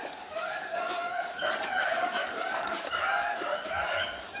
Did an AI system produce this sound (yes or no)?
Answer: yes